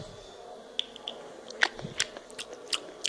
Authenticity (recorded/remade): recorded